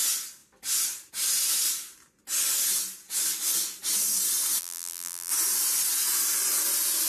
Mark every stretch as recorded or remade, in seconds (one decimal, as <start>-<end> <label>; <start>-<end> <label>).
0.0-4.6 recorded; 4.6-5.3 remade; 5.3-7.1 recorded